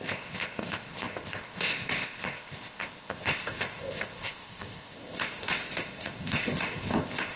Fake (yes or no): yes